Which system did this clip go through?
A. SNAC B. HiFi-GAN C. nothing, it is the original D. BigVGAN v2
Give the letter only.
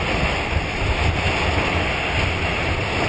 C